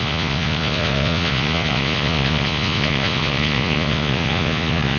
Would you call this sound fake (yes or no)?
yes